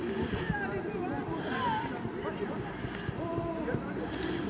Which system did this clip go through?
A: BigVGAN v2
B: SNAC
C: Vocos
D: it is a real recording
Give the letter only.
D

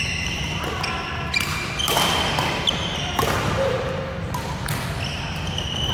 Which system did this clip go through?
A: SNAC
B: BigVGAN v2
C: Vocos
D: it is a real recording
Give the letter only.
D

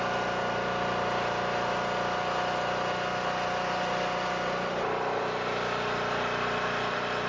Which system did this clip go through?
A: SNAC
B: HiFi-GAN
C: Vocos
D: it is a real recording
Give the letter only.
D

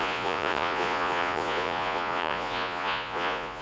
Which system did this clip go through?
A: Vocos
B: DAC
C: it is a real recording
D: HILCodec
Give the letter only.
A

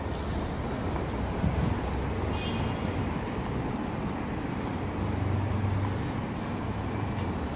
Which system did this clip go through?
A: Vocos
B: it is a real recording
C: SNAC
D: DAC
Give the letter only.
B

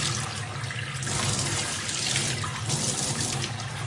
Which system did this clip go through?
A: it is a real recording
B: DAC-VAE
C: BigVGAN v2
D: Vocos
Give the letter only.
A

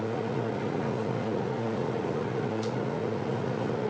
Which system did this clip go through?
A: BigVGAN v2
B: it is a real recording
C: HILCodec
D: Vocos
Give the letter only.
D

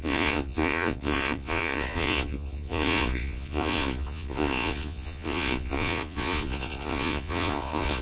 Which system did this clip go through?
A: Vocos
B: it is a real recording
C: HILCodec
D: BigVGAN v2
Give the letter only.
A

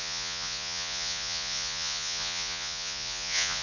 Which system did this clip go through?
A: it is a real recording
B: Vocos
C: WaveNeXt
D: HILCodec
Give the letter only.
B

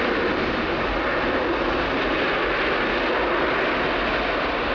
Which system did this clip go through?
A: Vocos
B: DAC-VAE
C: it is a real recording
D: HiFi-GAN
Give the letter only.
C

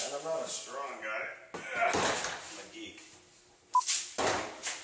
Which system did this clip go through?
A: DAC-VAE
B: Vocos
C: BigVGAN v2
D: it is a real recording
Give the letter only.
D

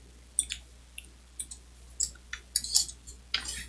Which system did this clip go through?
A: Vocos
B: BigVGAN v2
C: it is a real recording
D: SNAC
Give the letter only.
C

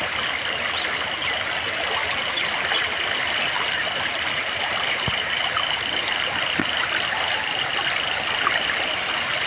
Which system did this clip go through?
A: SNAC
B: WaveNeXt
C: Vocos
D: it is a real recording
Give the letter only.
D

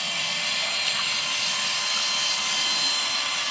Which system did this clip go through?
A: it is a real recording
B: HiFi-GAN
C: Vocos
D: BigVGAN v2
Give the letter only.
A